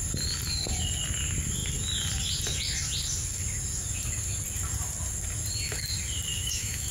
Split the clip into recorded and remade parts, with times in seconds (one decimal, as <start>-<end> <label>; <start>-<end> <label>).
0.0-6.3 recorded; 6.3-6.9 remade